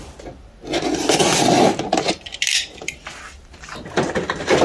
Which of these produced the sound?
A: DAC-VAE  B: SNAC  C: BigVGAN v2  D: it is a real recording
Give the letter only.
D